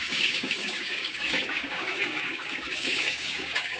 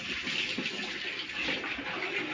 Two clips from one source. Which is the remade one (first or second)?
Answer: first